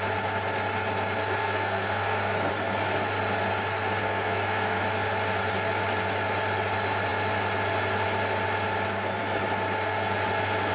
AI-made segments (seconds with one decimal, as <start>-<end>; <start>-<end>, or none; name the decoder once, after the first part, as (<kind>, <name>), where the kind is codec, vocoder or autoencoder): 1.4-2.5 (codec, SNAC); 4.0-4.8